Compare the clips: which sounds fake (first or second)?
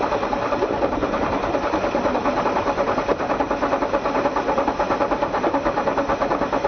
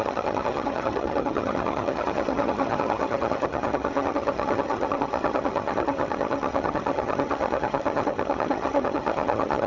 second